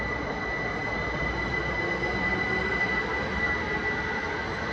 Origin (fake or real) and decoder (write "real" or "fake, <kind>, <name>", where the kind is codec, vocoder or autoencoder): real